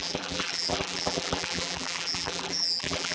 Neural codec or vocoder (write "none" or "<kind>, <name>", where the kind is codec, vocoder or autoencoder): vocoder, BigVGAN v2